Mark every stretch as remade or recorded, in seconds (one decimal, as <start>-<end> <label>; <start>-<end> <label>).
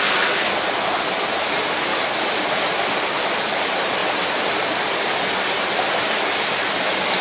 0.0-7.2 recorded